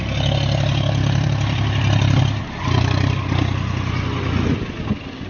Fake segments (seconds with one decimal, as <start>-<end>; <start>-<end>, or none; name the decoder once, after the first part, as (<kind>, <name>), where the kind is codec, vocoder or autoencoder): 1.0-2.8 (vocoder, BigVGAN v2)